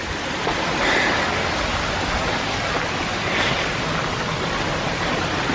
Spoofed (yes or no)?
no